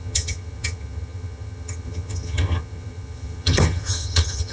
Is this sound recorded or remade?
remade